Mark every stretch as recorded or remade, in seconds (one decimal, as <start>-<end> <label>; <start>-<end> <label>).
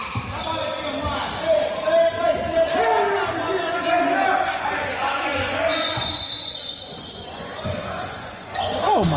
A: 0.0-3.4 recorded; 3.4-9.2 remade